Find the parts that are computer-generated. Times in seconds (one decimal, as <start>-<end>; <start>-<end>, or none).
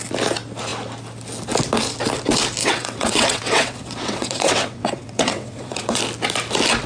2.6-6.0